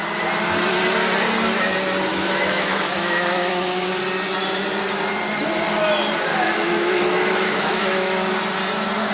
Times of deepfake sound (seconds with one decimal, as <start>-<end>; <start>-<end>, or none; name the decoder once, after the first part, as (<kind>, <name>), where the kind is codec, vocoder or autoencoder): 2.1-4.0 (autoencoder, DAC-VAE); 6.3-8.3